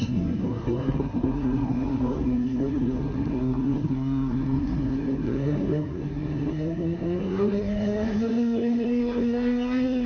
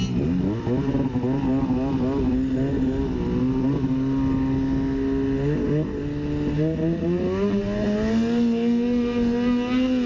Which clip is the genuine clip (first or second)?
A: second